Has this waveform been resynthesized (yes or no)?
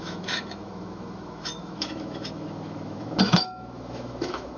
yes